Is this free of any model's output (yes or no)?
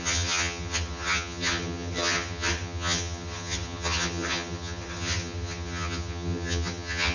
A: no